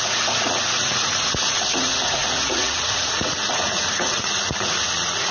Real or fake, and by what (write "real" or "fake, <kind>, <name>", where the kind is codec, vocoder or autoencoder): fake, vocoder, Vocos